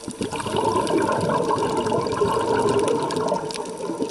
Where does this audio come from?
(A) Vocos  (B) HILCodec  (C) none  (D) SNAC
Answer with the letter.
C